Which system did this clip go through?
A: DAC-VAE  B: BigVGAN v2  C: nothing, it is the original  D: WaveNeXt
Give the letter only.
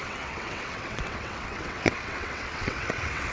D